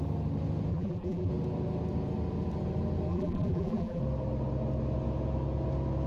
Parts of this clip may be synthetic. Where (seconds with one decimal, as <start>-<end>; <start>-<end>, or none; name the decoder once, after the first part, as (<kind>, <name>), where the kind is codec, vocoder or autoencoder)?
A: 0.7-1.3 (vocoder, BigVGAN v2); 3.1-4.0